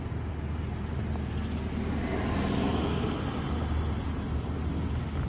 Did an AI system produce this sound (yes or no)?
no